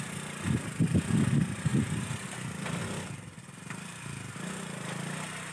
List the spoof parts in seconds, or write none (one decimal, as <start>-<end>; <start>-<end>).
none